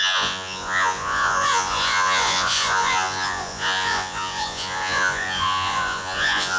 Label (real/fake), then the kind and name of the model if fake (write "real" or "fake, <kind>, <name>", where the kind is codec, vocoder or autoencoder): fake, vocoder, Vocos